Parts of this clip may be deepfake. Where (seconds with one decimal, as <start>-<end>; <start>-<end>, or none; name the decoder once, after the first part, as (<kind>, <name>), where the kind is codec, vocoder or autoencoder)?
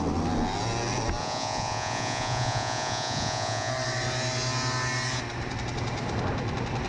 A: 1.2-3.7 (vocoder, Vocos)